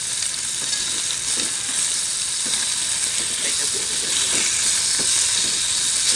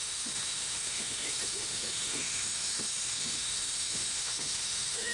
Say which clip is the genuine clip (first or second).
first